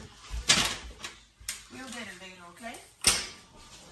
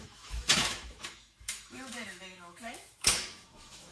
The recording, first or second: first